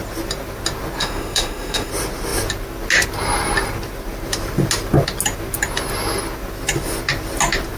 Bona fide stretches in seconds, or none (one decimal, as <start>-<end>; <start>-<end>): 0.0-1.0; 1.9-7.8

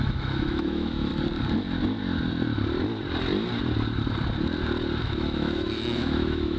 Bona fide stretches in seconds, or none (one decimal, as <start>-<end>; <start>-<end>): 1.1-5.0

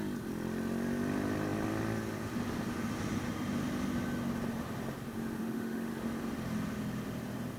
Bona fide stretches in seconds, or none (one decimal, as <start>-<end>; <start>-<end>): 0.0-5.4; 5.9-7.6

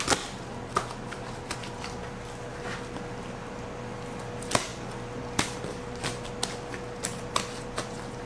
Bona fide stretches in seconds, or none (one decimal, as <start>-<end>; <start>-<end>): 0.0-8.3